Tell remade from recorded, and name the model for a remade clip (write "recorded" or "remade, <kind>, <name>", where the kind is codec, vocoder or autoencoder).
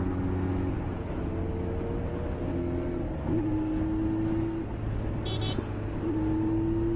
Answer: recorded